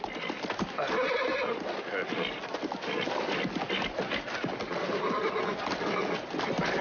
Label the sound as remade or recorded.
recorded